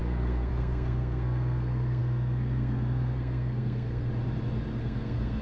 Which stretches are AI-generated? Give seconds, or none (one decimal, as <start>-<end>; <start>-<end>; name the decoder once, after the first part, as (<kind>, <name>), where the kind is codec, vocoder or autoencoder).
0.0-4.1 (codec, SNAC); 4.8-5.4

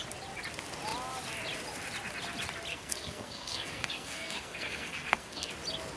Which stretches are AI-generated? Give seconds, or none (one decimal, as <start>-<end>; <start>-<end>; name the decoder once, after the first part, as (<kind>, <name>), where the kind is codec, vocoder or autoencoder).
2.7-5.5 (codec, SNAC)

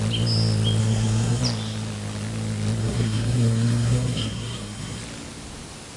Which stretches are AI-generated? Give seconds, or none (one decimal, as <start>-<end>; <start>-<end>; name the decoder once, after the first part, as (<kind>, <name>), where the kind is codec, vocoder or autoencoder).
0.8-1.4 (codec, SNAC); 2.8-5.0